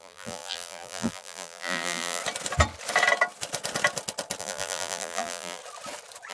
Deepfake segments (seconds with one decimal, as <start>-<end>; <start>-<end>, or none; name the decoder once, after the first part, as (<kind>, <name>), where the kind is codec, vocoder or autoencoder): 0.0-2.2 (vocoder, BigVGAN v2); 4.4-5.6